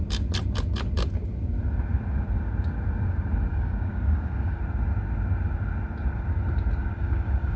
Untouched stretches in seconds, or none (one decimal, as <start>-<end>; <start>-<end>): 0.0-3.5; 4.6-6.8